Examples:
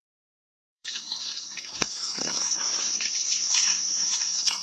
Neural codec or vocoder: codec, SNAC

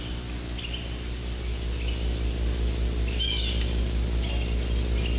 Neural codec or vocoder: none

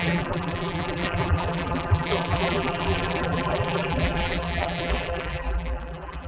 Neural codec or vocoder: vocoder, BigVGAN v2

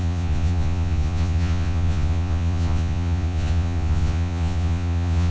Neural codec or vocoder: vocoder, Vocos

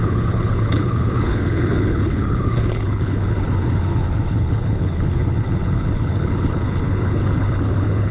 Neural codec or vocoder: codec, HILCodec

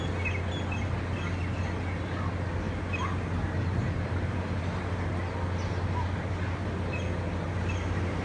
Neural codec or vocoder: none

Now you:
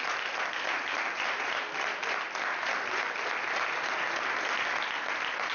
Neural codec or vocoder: none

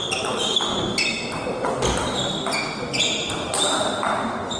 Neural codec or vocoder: none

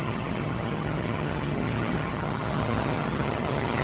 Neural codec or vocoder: vocoder, HiFi-GAN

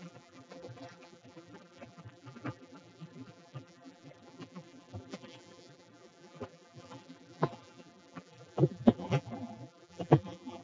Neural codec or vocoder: vocoder, BigVGAN v2